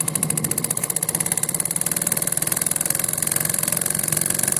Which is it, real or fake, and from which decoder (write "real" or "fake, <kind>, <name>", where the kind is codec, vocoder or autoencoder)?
real